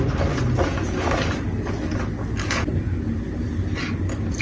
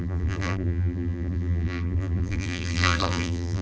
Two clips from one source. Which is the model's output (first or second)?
second